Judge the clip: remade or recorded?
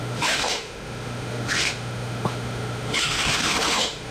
remade